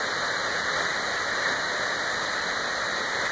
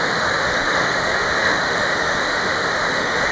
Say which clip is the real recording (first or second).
first